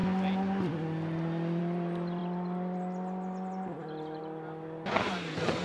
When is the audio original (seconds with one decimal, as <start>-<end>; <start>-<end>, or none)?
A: 0.0-5.6